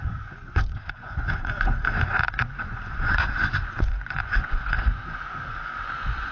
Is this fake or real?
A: fake